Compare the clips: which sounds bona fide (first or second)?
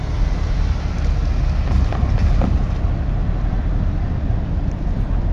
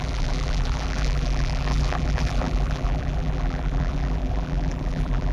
first